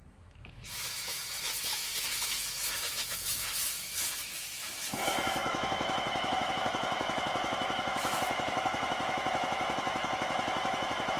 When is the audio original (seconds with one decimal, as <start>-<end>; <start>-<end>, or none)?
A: none